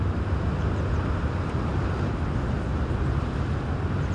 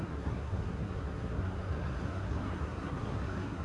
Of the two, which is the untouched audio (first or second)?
first